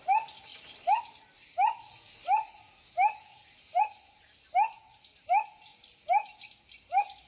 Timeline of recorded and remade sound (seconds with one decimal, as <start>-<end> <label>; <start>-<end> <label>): 0.0-7.3 recorded